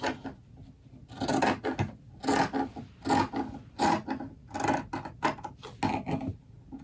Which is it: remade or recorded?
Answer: recorded